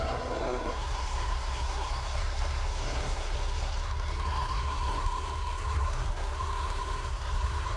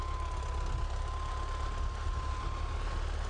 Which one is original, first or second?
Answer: second